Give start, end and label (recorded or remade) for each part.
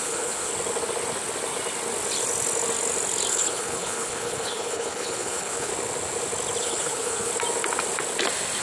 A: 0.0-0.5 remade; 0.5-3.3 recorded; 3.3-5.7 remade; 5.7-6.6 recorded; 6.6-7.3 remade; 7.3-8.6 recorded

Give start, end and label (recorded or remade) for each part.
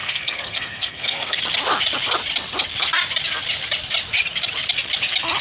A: 0.0-1.4 remade; 1.4-5.4 recorded